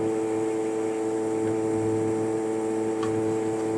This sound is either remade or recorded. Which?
recorded